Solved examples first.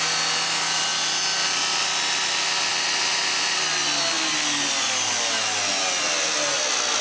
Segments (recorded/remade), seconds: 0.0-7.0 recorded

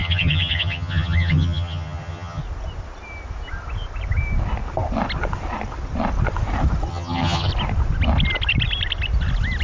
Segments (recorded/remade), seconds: 0.0-2.4 remade; 2.4-6.9 recorded; 6.9-7.5 remade; 7.5-9.6 recorded

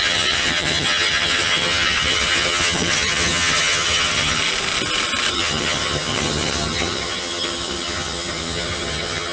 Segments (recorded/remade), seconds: 0.0-4.4 remade; 4.4-5.3 recorded; 5.3-9.3 remade

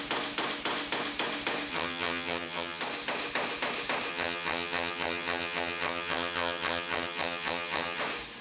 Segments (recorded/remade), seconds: 0.0-1.7 recorded; 1.7-2.8 remade; 2.8-4.1 recorded; 4.1-8.0 remade; 8.0-8.4 recorded

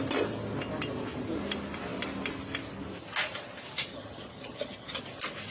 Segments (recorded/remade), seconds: 0.0-3.9 recorded; 3.9-5.0 remade; 5.0-5.5 recorded